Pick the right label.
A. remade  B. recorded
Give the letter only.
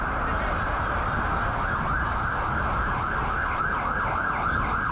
B